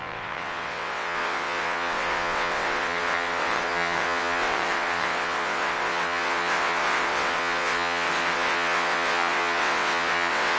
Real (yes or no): no